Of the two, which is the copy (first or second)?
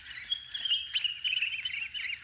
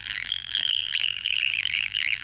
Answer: second